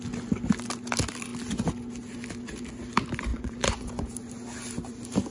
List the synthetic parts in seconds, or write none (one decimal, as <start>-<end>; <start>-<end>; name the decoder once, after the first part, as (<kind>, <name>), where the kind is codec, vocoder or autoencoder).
3.3-4.1 (vocoder, Vocos)